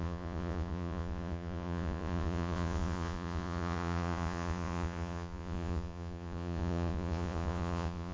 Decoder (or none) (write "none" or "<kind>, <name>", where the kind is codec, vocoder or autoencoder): vocoder, Vocos